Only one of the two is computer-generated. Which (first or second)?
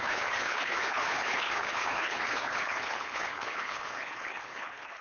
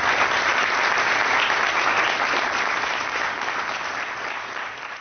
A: first